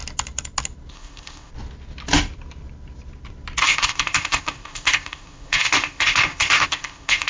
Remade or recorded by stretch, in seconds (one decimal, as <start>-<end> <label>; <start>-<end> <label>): 0.0-0.9 recorded; 0.9-1.5 remade; 1.5-3.6 recorded; 3.6-7.3 remade